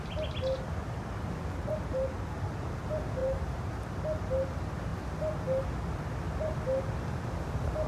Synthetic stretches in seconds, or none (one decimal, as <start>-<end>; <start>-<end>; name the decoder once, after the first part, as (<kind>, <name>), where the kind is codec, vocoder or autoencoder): 3.2-3.7 (vocoder, BigVGAN v2)